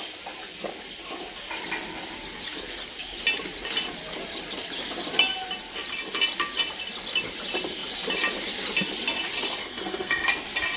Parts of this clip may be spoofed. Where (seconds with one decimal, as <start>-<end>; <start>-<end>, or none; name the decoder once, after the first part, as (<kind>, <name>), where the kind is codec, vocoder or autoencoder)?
9.6-10.3 (codec, SNAC)